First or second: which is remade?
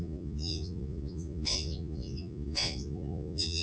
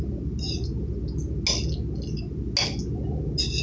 first